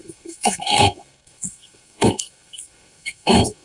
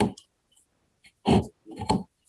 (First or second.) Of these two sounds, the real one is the second